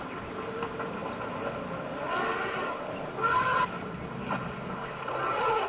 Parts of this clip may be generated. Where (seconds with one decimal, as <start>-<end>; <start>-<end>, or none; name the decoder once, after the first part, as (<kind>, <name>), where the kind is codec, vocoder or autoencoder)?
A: none